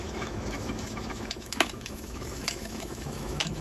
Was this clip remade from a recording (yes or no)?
yes